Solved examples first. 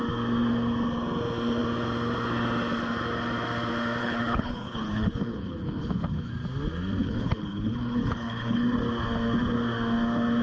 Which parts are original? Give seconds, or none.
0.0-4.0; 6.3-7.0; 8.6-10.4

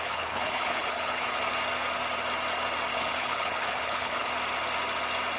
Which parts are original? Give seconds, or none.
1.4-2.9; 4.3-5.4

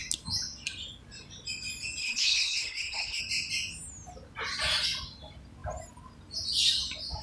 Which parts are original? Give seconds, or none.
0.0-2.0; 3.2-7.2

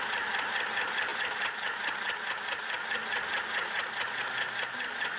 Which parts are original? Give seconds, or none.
0.0-5.2

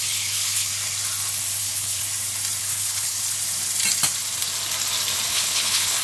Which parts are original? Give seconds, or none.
0.7-1.6; 2.0-2.6; 3.2-5.3

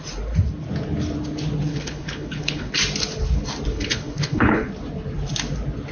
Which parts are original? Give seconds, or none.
0.0-1.7; 2.7-3.7; 4.7-5.9

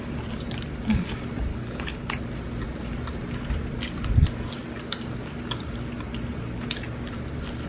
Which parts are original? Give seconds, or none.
0.0-1.5; 2.2-7.7